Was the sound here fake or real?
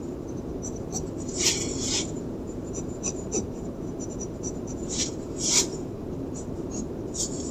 fake